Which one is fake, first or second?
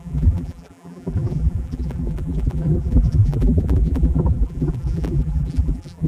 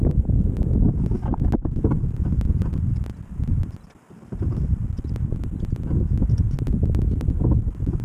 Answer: first